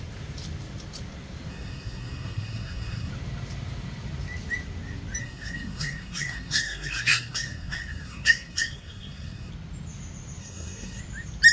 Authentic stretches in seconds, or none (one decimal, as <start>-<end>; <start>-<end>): 0.0-1.5; 3.1-5.2; 9.5-10.4; 11.0-11.5